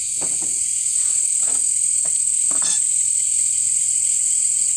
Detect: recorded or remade remade